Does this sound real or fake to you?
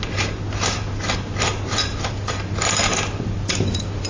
real